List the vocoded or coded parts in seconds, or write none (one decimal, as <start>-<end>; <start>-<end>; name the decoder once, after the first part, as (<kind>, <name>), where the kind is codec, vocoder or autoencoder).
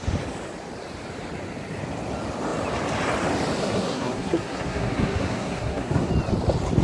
3.6-6.1 (codec, SNAC)